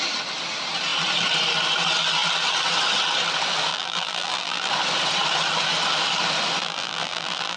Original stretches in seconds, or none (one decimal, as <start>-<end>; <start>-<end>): 0.0-3.7; 4.7-6.6